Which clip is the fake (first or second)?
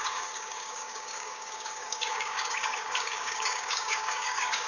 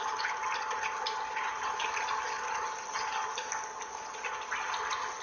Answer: first